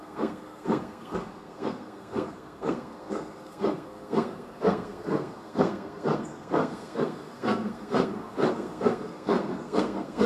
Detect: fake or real fake